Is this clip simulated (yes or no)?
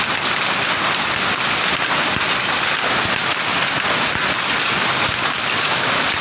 no